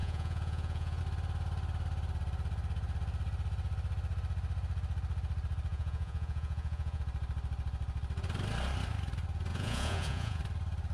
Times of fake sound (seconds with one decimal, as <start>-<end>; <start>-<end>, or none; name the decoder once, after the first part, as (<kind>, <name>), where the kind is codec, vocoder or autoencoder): 0.0-1.0 (vocoder, Vocos); 5.7-7.0; 9.5-10.4